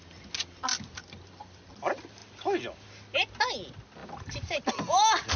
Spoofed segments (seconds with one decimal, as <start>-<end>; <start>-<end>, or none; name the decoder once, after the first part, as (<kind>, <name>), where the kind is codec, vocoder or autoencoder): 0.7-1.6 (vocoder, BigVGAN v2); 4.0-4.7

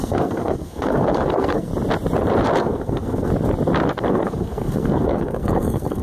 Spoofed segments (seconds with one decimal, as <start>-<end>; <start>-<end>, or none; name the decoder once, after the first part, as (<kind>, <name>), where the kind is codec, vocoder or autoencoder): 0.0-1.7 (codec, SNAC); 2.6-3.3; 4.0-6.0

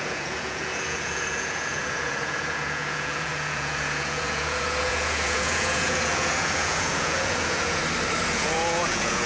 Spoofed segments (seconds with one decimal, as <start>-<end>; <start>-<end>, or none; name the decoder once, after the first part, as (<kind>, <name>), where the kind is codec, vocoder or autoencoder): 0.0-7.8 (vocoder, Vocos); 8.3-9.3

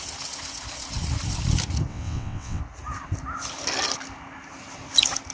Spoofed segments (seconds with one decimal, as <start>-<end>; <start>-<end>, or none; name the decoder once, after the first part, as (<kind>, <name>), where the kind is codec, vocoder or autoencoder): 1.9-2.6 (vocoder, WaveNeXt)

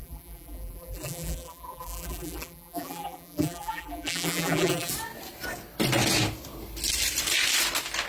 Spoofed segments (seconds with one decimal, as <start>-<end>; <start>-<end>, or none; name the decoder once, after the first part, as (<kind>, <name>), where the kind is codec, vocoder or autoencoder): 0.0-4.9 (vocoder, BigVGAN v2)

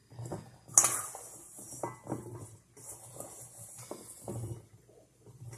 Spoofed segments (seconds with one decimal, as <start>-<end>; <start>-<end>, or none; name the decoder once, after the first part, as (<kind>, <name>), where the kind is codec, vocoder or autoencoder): none

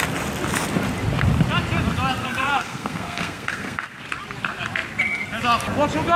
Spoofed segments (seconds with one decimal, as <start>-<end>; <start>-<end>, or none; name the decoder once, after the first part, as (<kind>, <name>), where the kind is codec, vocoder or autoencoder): 2.2-4.0 (codec, SNAC)